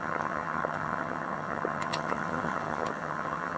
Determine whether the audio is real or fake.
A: fake